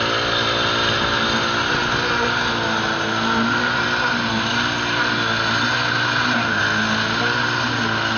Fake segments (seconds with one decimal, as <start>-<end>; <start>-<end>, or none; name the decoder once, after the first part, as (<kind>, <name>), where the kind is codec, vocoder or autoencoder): none